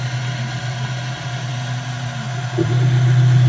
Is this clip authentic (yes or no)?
yes